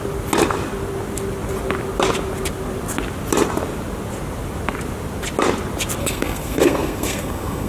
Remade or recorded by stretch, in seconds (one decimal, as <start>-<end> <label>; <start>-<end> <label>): 0.0-6.0 recorded; 6.0-7.7 remade